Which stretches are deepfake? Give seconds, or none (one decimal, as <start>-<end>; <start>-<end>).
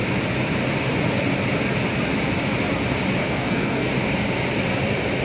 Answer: 3.2-3.9